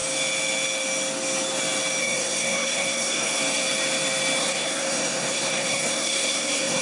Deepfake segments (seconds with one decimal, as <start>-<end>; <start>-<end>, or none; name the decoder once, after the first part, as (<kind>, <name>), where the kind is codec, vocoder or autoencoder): 2.0-3.4 (codec, SNAC); 4.4-6.8